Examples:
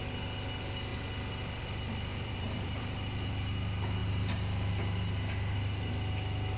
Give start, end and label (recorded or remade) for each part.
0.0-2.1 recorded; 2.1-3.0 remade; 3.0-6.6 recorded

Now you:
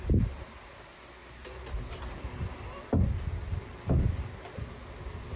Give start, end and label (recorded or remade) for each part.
0.0-1.2 recorded; 1.2-2.4 remade; 2.4-3.5 recorded; 3.5-4.6 remade; 4.6-5.4 recorded